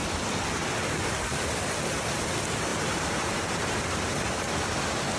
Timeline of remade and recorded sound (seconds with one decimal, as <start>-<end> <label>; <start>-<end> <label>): 0.0-2.7 recorded; 2.7-4.4 remade; 4.4-5.2 recorded